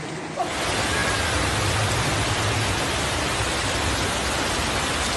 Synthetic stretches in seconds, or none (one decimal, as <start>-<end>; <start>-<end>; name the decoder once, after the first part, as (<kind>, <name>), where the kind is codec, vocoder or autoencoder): none